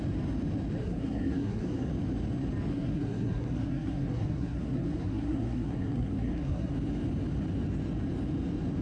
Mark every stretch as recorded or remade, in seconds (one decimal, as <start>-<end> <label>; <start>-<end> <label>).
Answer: 0.0-0.8 recorded; 0.8-1.9 remade; 1.9-2.7 recorded; 2.7-6.7 remade; 6.7-8.8 recorded